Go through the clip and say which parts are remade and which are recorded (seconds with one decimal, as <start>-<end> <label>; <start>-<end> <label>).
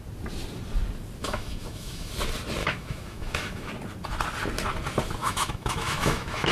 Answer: 0.0-1.2 recorded; 1.2-2.1 remade; 2.1-2.6 recorded; 2.6-3.7 remade; 3.7-5.2 recorded; 5.2-6.5 remade